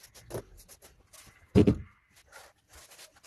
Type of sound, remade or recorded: recorded